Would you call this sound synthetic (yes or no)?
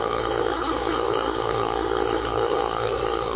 yes